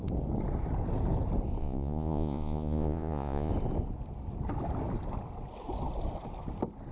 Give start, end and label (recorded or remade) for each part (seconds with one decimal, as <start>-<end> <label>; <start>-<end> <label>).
0.0-1.6 recorded; 1.6-3.5 remade; 3.5-6.9 recorded